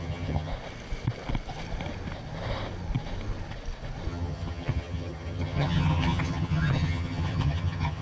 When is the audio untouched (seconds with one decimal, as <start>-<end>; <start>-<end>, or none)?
0.5-4.1